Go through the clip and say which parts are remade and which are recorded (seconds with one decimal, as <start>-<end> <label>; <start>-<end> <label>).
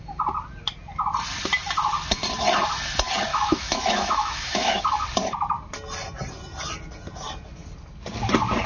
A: 0.0-3.3 recorded; 3.3-4.8 remade; 4.8-8.7 recorded